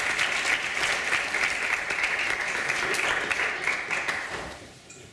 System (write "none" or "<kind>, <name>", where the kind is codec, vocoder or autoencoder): none